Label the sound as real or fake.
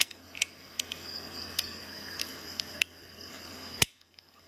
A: fake